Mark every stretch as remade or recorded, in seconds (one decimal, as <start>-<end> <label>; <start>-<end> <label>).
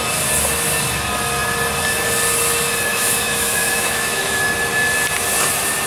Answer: 0.0-2.9 recorded; 2.9-4.4 remade; 4.4-5.9 recorded